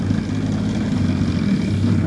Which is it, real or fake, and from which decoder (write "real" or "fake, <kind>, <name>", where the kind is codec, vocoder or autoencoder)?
real